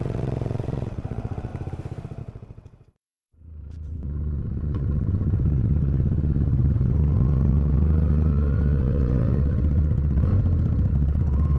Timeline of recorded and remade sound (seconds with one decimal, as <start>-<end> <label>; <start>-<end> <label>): 0.0-1.5 remade; 1.5-2.2 recorded; 2.2-10.3 remade; 10.3-10.9 recorded; 10.9-11.6 remade